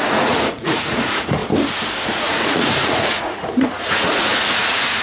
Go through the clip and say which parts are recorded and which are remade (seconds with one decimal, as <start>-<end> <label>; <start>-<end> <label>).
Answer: 0.0-1.4 remade; 1.4-2.1 recorded; 2.1-5.0 remade